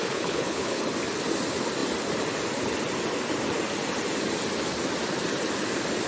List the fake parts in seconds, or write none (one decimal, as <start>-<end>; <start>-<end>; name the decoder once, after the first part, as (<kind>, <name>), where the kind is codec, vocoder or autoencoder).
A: 0.0-0.8 (codec, HILCodec)